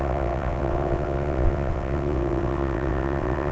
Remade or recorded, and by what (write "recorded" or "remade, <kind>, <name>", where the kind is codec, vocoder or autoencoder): remade, vocoder, WaveNeXt